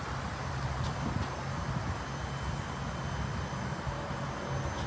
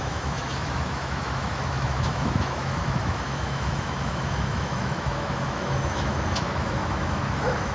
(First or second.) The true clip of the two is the first